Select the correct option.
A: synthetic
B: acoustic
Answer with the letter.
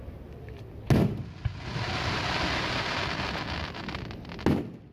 B